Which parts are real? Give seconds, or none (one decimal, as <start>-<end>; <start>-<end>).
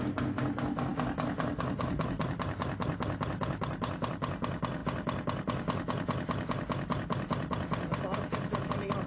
0.0-4.8; 8.7-9.1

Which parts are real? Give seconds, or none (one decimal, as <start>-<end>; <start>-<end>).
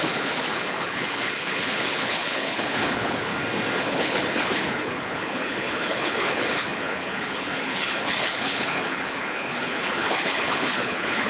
3.3-3.8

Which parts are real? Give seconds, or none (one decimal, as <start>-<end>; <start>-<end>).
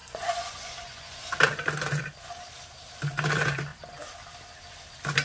1.4-5.2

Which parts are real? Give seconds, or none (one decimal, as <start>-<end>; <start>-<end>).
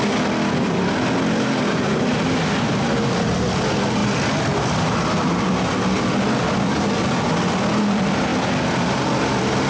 none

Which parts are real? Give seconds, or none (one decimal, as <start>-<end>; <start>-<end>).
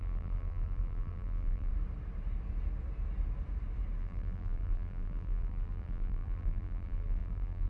1.7-4.0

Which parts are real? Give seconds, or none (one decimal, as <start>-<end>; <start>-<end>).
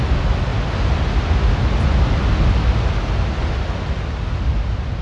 0.0-5.0